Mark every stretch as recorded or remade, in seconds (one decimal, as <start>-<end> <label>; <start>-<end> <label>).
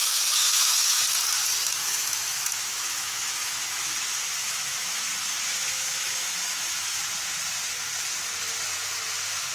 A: 0.0-1.0 remade; 1.0-1.8 recorded; 1.8-3.9 remade; 3.9-4.4 recorded; 4.4-5.0 remade; 5.0-5.7 recorded; 5.7-7.0 remade; 7.0-9.5 recorded